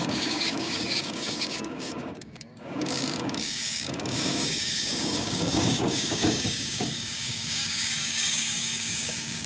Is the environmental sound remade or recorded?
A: remade